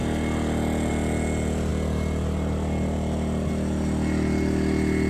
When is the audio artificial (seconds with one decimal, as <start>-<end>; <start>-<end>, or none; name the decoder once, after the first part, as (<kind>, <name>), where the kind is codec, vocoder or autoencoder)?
none